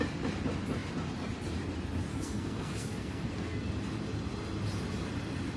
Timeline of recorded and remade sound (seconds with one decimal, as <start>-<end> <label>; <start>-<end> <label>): 0.0-2.1 recorded; 2.1-3.7 remade; 3.7-5.6 recorded